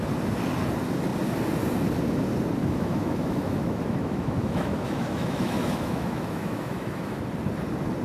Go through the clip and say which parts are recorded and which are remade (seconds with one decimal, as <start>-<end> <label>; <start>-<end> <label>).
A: 0.0-2.6 recorded; 2.6-7.2 remade; 7.2-8.0 recorded